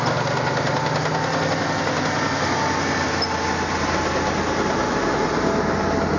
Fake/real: real